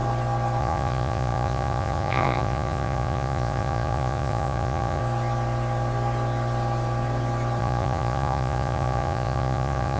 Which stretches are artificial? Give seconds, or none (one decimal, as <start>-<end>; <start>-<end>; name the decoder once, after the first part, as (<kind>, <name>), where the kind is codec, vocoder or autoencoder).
0.6-5.0 (vocoder, Vocos); 7.6-10.0

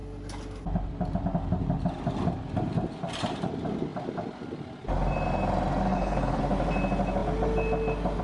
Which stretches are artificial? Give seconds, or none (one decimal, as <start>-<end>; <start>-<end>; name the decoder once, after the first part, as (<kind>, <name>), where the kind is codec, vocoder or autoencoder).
5.9-6.4 (codec, HILCodec)

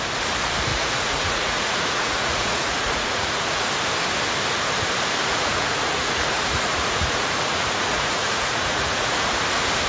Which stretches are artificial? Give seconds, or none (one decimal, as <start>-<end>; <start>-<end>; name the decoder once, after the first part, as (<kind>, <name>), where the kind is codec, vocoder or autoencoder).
0.7-3.7 (vocoder, Vocos); 5.2-9.4

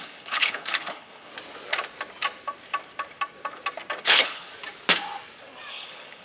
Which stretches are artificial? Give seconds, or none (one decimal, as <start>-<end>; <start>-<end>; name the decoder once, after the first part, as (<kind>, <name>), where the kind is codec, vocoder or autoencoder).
0.0-1.3 (codec, HILCodec); 4.0-4.5; 5.7-6.2

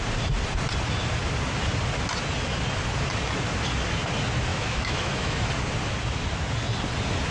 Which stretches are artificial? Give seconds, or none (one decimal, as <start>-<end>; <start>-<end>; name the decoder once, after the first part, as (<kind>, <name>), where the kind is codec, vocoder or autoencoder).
4.5-5.5 (autoencoder, DAC-VAE)

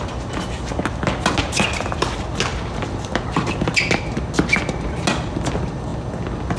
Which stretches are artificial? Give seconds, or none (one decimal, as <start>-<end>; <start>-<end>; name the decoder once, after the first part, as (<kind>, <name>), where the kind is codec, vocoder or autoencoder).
none

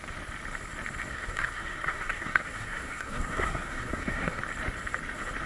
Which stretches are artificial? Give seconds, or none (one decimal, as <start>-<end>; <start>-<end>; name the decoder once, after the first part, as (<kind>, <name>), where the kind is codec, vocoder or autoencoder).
1.1-4.4 (codec, SNAC)

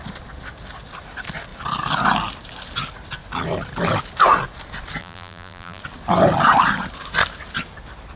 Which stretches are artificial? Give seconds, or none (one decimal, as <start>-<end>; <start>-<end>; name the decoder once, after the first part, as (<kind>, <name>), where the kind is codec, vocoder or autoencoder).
5.0-5.8 (vocoder, BigVGAN v2)